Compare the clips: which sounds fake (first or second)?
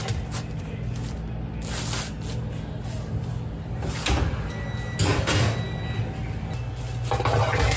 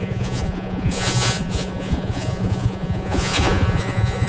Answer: second